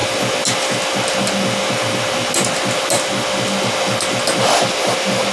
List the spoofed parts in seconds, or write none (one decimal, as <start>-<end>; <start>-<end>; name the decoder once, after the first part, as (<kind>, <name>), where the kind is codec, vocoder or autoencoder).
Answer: none